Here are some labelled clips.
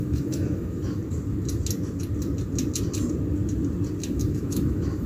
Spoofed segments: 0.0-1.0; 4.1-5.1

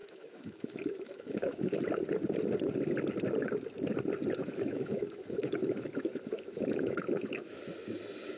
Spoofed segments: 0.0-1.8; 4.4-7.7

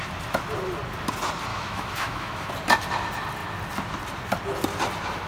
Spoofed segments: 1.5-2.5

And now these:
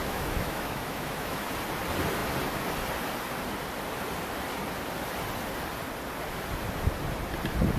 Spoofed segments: 0.0-1.5